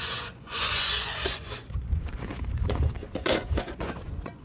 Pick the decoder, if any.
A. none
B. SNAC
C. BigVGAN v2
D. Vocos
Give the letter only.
D